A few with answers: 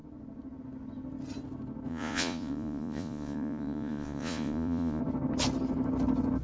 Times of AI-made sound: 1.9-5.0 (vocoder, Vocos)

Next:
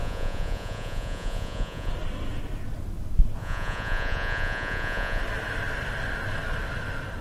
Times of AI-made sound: 0.0-1.9 (vocoder, Vocos); 3.4-5.2

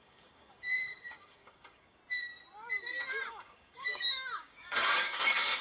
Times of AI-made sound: 0.0-2.0 (codec, DAC); 3.3-5.6

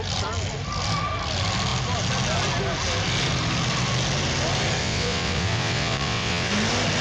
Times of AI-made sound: 4.8-6.5 (vocoder, WaveNeXt)

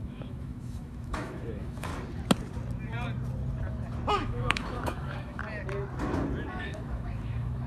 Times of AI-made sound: 0.0-1.9 (autoencoder, DAC-VAE); 4.1-5.4; 6.6-7.7